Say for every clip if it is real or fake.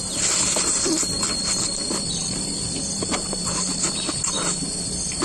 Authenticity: fake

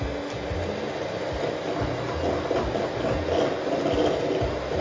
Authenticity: real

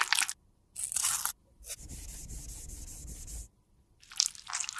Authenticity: real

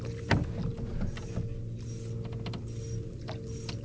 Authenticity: real